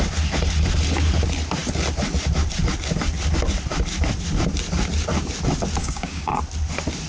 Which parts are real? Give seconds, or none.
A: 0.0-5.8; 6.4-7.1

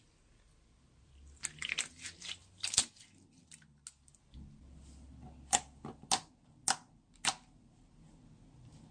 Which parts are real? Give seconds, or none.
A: 0.0-8.9

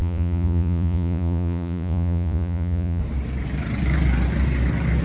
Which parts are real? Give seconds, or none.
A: 3.0-5.0